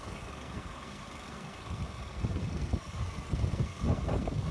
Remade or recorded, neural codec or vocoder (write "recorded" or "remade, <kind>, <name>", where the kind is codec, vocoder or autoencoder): remade, codec, SNAC